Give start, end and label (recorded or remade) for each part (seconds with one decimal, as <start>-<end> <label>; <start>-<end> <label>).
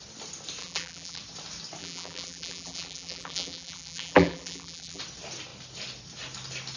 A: 0.0-0.6 recorded; 0.6-1.2 remade; 1.2-1.8 recorded; 1.8-5.0 remade; 5.0-6.8 recorded